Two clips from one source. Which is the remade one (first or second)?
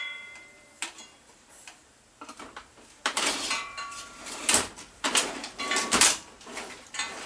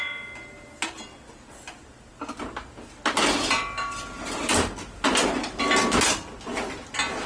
first